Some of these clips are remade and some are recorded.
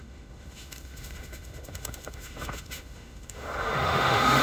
remade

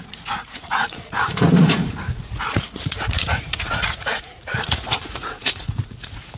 remade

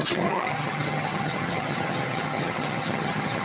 remade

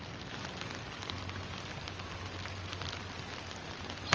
recorded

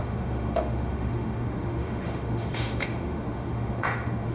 remade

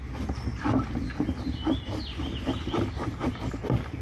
recorded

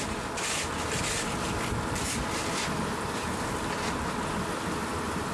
recorded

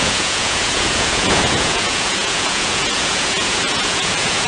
remade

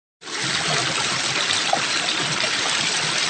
recorded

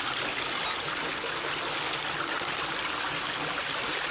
recorded